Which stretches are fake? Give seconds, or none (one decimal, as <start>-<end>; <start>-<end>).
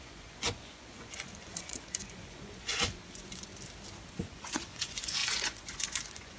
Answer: 0.0-3.5; 4.1-6.4